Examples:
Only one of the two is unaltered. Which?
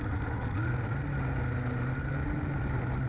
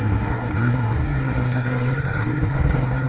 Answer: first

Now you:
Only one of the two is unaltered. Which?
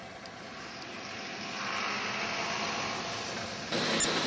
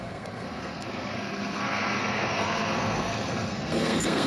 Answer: first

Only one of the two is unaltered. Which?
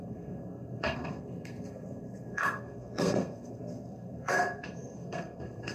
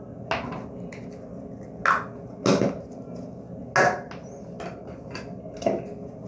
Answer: second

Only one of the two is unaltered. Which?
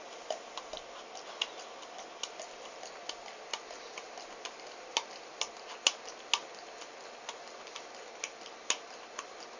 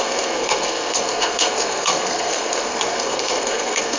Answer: first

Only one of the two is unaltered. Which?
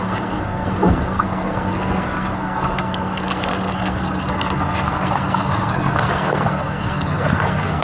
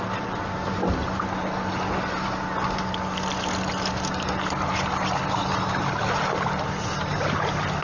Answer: second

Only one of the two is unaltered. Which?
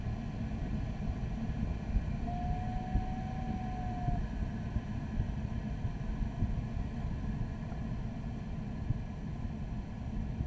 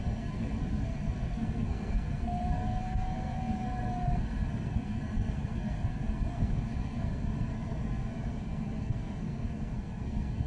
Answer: first